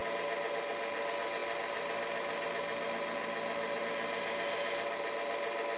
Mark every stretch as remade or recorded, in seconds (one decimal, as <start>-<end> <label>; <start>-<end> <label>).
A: 0.0-5.8 recorded